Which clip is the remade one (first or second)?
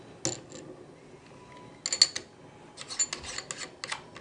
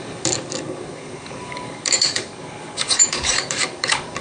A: second